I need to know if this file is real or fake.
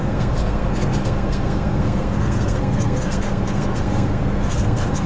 fake